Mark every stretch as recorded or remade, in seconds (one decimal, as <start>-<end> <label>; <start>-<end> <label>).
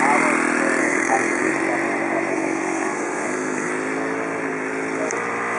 0.0-0.8 recorded; 0.8-1.5 remade; 1.5-2.3 recorded; 2.3-3.7 remade; 3.7-5.6 recorded